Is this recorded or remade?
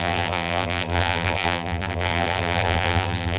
remade